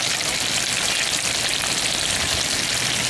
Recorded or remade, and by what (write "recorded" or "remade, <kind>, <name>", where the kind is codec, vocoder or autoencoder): recorded